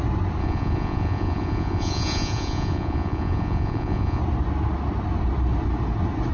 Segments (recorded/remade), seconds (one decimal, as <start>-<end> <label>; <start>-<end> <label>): 0.0-0.4 recorded; 0.4-4.2 remade; 4.2-6.3 recorded